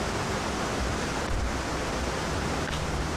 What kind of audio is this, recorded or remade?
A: recorded